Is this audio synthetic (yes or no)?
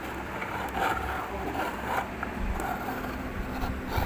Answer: yes